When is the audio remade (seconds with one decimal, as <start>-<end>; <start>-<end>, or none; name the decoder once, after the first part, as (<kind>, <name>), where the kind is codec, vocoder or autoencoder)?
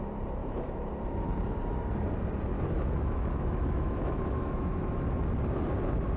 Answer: 0.4-0.9 (autoencoder, DAC-VAE); 2.5-5.1